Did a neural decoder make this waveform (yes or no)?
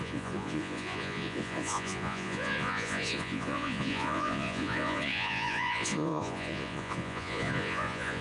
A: yes